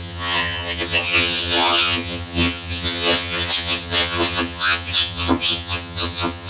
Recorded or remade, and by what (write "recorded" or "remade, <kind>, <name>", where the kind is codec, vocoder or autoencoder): remade, vocoder, HiFi-GAN